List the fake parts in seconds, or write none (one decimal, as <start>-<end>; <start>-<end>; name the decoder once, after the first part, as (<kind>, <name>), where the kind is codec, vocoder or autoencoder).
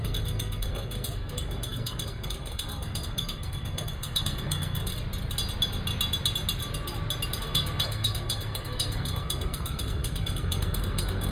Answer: 0.0-4.9 (codec, SNAC); 7.4-11.3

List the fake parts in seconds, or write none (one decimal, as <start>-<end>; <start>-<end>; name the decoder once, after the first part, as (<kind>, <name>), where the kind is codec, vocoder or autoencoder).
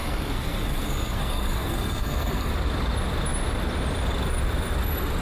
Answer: 0.0-2.5 (codec, SNAC)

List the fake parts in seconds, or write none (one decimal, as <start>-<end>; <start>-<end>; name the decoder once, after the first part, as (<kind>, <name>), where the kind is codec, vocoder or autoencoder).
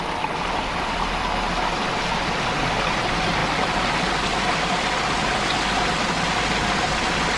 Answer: none